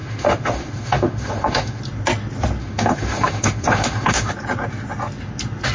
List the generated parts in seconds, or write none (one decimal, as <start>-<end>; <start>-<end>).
0.0-1.8; 2.6-4.3